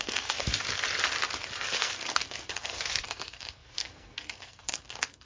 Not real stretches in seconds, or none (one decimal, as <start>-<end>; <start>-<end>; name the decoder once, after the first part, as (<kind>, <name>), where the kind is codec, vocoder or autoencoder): 0.0-0.5 (codec, SNAC); 1.6-5.3